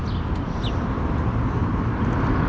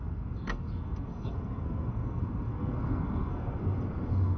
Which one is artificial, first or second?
second